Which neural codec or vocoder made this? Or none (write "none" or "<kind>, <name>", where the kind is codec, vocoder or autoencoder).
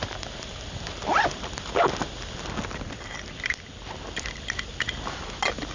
none